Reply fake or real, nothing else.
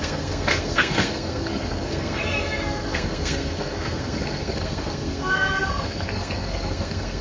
fake